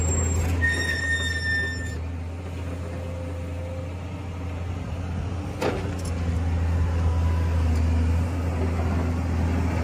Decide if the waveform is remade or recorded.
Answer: recorded